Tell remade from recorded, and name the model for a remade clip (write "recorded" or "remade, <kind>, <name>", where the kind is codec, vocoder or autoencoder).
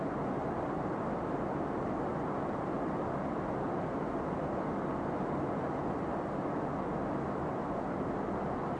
recorded